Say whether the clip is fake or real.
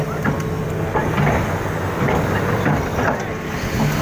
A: real